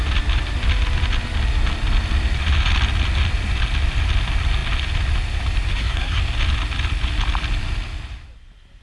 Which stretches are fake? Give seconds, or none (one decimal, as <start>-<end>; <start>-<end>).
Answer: 5.7-6.2

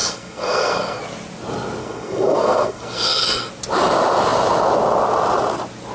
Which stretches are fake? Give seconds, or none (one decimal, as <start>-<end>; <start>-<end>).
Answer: 0.0-1.0; 1.8-3.5